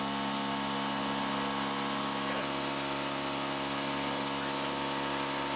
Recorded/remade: recorded